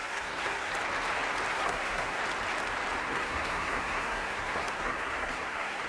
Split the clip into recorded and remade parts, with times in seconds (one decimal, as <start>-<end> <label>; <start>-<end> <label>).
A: 0.0-0.7 remade; 0.7-1.5 recorded; 1.5-2.2 remade; 2.2-3.0 recorded; 3.0-5.9 remade